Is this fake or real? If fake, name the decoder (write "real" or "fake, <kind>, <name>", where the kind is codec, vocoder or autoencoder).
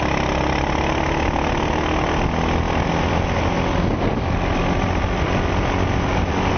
real